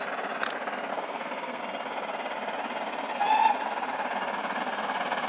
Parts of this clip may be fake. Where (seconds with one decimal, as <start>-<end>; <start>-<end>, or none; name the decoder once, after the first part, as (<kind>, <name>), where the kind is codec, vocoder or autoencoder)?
0.9-1.6 (codec, SNAC)